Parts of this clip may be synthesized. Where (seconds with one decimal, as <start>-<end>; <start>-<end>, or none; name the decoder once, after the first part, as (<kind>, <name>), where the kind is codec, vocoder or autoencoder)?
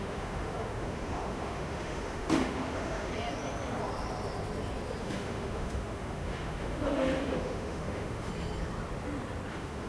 0.0-3.1 (autoencoder, DAC-VAE); 5.0-8.3; 9.5-9.9